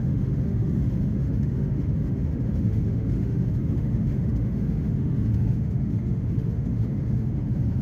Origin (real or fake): fake